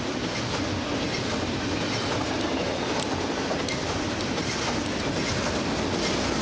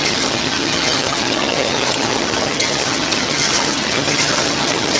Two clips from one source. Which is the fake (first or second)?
second